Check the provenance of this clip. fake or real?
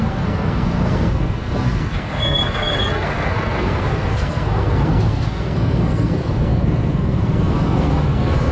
fake